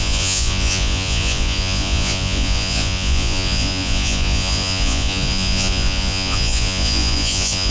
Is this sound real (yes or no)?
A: no